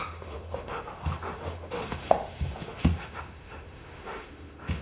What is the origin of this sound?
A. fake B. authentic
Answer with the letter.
A